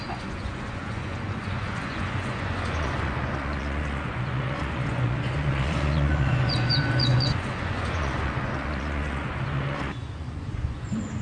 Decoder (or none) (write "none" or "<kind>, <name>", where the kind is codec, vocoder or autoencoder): vocoder, Vocos